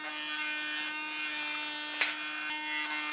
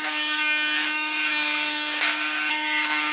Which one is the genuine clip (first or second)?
first